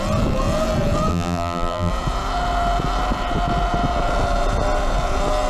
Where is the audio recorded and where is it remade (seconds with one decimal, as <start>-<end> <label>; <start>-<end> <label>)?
0.0-1.1 recorded; 1.1-1.9 remade; 1.9-5.5 recorded